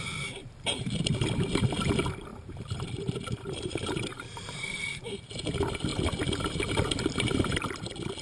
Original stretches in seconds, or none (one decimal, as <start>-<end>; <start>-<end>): 0.0-0.4; 1.0-2.3; 5.2-8.2

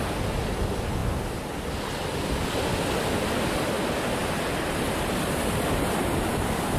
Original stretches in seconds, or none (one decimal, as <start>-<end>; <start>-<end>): 0.0-6.8

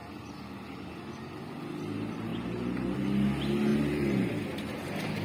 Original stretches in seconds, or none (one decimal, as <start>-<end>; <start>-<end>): 0.0-2.3; 3.0-3.7; 4.3-5.2

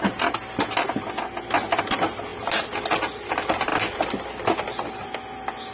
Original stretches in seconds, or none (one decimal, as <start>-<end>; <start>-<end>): 0.0-5.7

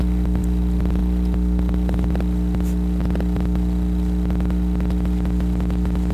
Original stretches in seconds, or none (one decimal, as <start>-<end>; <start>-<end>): none

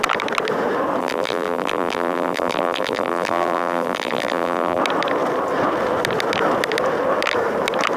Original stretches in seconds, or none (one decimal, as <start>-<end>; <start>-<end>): 0.0-1.0; 4.8-8.0

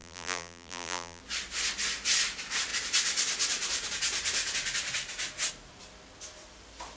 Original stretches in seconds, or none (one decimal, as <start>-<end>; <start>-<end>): 1.2-7.0

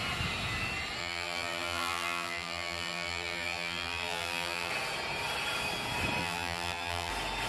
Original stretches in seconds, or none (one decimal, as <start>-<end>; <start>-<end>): 0.0-1.0; 4.7-6.2; 7.1-7.5